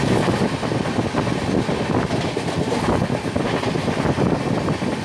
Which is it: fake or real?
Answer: real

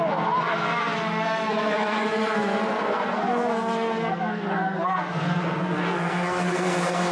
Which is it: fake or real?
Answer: fake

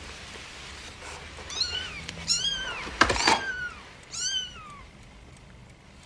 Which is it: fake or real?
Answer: fake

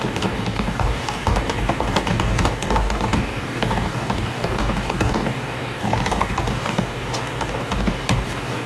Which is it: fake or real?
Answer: fake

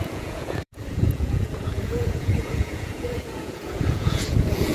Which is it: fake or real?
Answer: fake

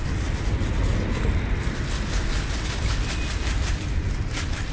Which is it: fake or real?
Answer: real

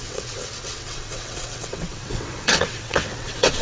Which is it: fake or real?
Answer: fake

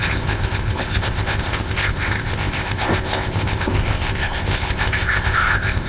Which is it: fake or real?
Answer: fake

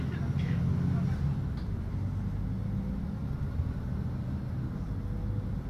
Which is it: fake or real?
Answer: real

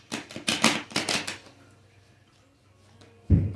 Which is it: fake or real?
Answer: fake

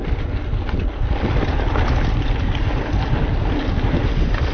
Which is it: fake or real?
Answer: real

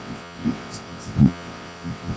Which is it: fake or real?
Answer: fake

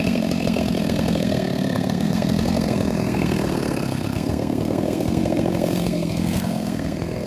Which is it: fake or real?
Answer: fake